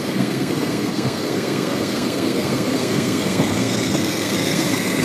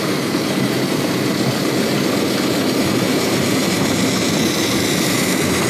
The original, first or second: second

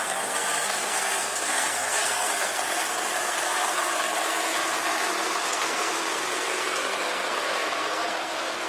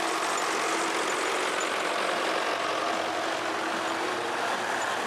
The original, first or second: second